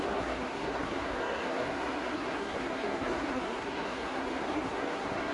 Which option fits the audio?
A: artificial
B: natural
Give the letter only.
A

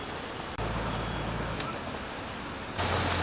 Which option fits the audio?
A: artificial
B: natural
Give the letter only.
B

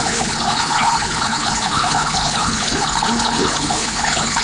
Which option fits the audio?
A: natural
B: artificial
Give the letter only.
B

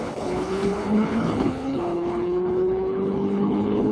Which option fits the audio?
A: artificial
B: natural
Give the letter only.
A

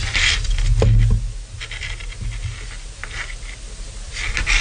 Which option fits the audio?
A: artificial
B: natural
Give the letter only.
B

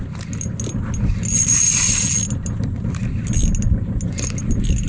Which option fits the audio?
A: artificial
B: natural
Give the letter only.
B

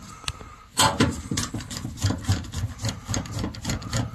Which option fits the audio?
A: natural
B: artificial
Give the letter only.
A